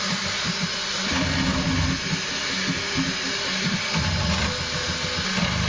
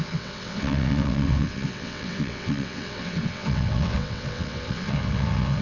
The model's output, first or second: second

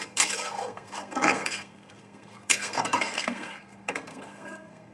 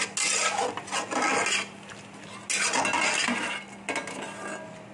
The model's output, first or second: first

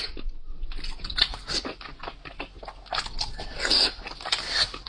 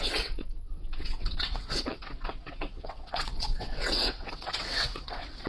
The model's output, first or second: second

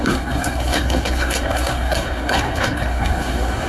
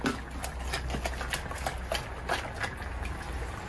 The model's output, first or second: first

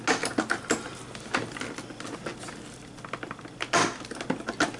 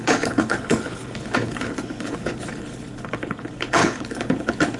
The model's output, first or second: second